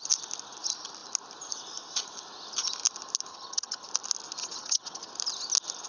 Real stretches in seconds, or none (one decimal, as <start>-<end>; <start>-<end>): 0.0-3.3; 3.9-4.4; 5.1-5.9